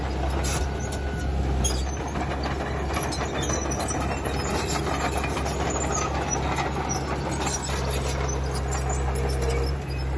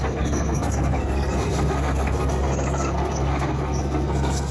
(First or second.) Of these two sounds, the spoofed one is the second